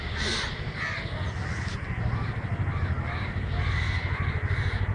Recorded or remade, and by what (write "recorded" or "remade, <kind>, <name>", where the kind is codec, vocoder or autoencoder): recorded